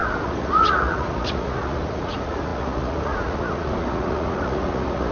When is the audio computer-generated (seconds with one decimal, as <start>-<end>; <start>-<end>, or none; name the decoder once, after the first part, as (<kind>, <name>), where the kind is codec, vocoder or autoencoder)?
0.0-5.1 (vocoder, Vocos)